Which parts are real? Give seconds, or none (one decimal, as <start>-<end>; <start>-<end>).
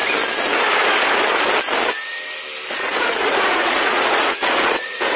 0.0-2.8